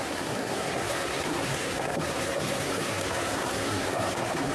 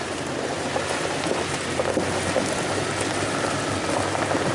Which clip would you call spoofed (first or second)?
first